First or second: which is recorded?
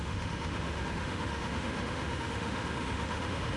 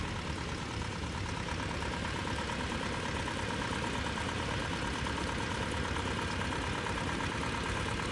second